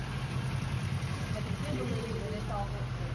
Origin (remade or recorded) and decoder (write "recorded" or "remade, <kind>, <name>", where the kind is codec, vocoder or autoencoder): recorded